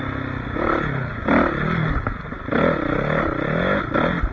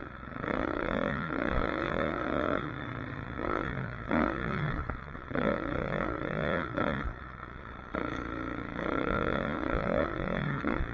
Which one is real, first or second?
first